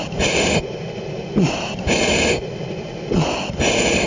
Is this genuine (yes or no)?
yes